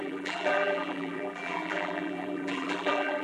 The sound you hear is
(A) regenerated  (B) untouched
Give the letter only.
A